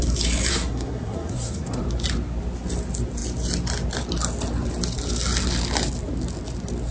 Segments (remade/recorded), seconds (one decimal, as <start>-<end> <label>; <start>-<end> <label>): 0.0-0.5 recorded; 0.5-1.8 remade; 1.8-6.9 recorded